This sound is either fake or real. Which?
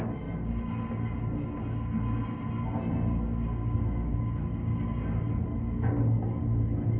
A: real